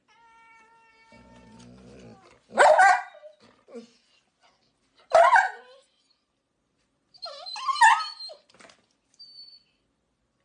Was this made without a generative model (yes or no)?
yes